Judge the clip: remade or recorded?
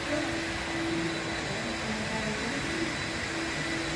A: recorded